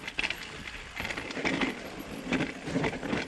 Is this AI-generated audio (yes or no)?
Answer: no